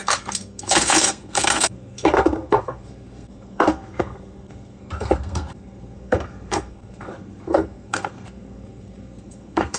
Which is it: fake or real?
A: fake